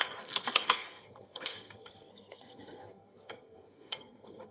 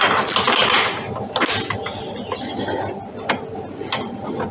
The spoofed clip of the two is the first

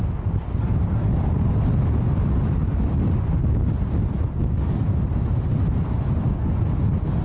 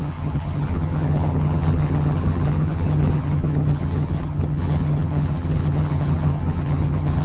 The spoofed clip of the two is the second